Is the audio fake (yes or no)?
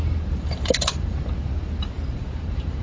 yes